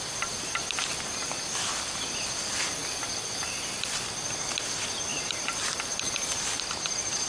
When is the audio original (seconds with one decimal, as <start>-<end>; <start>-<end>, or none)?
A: 0.0-7.3